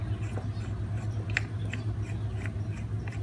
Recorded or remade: recorded